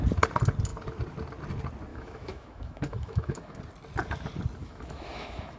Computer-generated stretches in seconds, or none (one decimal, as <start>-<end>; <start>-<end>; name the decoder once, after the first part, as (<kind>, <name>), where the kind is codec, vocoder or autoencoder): 1.9-3.6 (autoencoder, DAC-VAE); 4.6-5.6